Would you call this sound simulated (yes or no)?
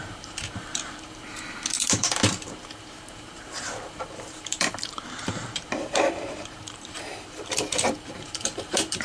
yes